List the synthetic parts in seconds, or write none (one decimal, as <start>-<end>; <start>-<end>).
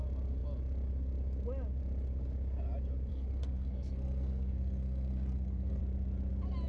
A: 3.1-5.8